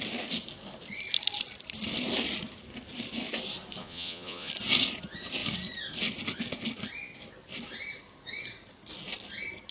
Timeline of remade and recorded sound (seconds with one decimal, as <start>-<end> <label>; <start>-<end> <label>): 0.0-3.8 recorded; 3.8-4.5 remade; 4.5-9.7 recorded